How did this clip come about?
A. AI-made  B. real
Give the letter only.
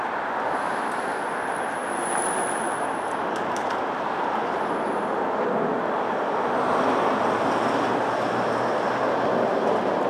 B